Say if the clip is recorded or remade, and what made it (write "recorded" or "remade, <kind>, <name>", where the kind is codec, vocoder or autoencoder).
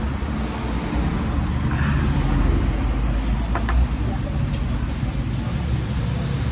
recorded